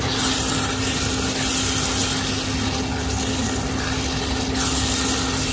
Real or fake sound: real